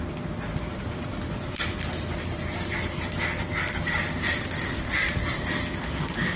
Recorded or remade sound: remade